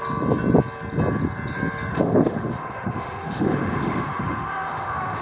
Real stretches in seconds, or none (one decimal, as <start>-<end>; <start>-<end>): 0.0-1.9